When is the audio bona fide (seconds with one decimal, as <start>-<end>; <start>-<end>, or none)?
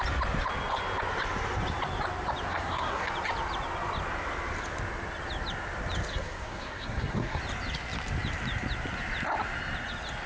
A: 0.0-2.5; 3.1-6.1; 7.4-10.3